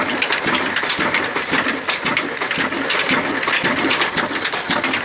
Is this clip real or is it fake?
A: real